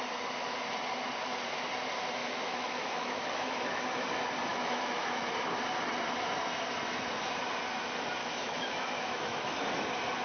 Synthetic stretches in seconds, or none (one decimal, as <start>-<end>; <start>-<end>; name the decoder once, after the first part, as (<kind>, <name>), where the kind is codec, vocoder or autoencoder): 2.2-3.8 (autoencoder, DAC-VAE); 4.5-5.3; 8.2-9.5